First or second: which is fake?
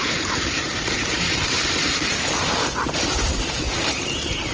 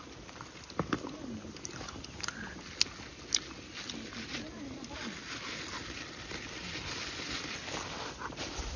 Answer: first